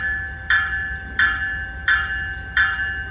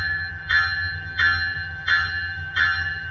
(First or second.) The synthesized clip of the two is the second